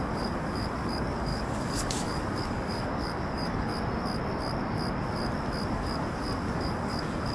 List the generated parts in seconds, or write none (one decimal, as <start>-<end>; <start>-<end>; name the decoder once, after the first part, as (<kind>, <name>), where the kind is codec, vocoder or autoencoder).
0.0-3.7 (codec, DAC); 5.7-7.3